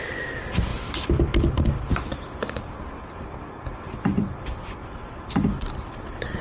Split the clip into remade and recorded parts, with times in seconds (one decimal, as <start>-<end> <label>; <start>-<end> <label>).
0.0-6.4 recorded